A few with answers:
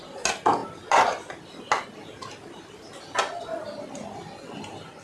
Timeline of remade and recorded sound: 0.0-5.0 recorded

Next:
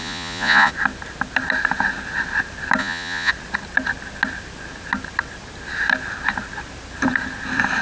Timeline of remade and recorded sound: 0.0-0.7 remade; 0.7-2.8 recorded; 2.8-3.3 remade; 3.3-7.8 recorded

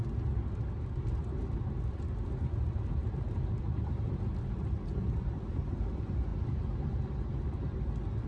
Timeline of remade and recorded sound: 0.0-8.3 recorded

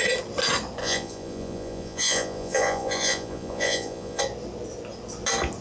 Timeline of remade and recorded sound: 0.0-0.8 recorded; 0.8-4.2 remade; 4.2-5.6 recorded

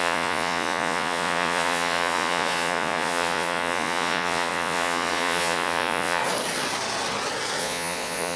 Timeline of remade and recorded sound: 0.0-6.2 remade; 6.2-7.6 recorded; 7.6-8.4 remade

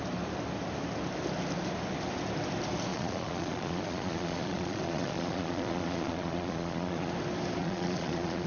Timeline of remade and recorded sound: 0.0-2.9 recorded; 2.9-7.1 remade; 7.1-7.6 recorded; 7.6-8.5 remade

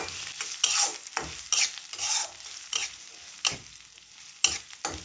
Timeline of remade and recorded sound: 0.0-5.0 recorded